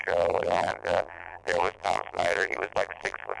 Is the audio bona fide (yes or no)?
no